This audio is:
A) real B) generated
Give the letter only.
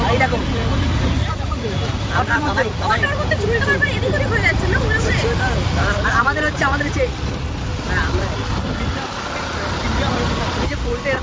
A